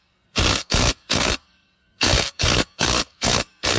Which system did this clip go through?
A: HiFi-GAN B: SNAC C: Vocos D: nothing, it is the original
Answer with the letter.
B